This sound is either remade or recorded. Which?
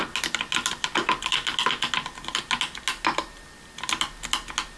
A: recorded